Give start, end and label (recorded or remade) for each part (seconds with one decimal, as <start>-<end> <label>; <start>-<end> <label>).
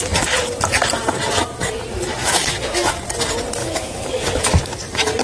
0.0-2.2 recorded; 2.2-2.9 remade; 2.9-3.6 recorded; 3.6-4.8 remade; 4.8-5.2 recorded